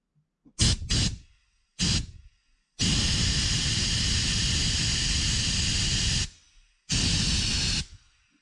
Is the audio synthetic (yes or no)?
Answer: no